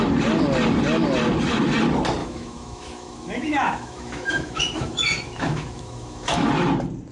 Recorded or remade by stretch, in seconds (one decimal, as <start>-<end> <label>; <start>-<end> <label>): 0.0-2.2 recorded; 2.2-6.5 remade; 6.5-7.1 recorded